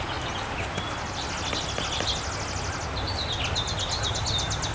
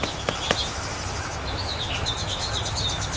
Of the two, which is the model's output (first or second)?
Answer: second